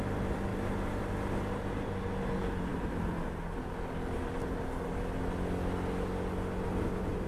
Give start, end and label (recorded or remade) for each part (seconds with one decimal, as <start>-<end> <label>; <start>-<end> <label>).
0.0-0.5 recorded; 0.5-1.1 remade; 1.1-7.3 recorded